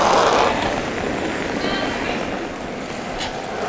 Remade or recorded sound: recorded